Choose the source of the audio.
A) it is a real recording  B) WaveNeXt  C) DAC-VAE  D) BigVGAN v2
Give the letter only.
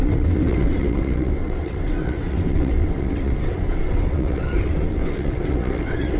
B